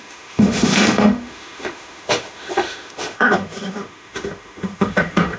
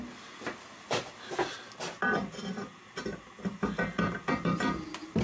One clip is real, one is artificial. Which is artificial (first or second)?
first